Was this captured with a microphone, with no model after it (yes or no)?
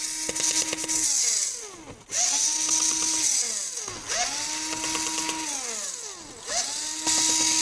yes